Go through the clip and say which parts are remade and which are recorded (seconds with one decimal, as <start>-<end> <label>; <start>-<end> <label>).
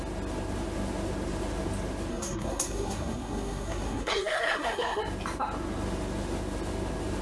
0.0-2.1 recorded; 2.1-5.0 remade; 5.0-7.2 recorded